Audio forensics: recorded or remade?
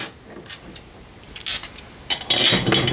recorded